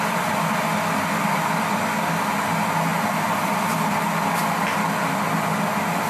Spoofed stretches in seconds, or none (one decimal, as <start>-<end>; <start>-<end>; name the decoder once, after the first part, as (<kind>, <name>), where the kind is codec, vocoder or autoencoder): none